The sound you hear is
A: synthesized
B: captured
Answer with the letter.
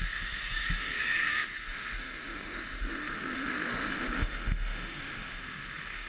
A